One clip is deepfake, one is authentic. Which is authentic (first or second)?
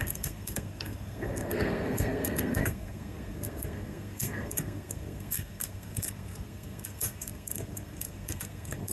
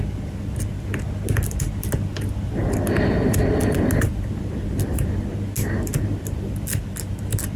second